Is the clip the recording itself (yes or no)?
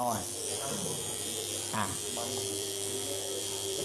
no